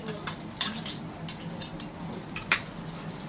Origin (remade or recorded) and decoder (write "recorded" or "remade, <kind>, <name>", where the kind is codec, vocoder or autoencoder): recorded